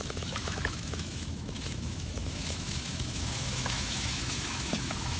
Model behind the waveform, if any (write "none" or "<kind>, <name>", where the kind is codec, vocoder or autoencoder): autoencoder, DAC-VAE